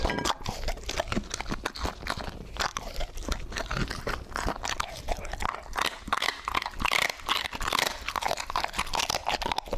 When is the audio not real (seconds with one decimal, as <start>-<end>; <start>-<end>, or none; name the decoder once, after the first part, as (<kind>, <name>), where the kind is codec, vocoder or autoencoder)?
none